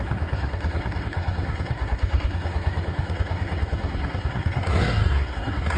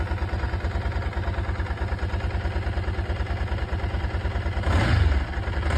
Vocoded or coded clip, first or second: first